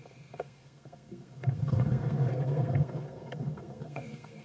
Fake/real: fake